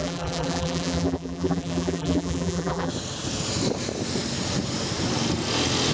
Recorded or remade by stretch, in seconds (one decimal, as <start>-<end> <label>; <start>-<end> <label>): 0.0-2.9 remade; 2.9-5.9 recorded